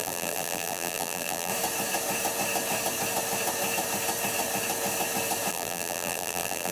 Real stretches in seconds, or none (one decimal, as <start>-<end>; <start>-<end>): 1.5-5.5